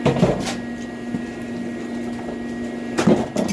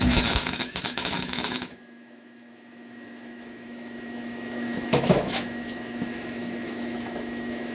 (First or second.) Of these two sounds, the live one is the first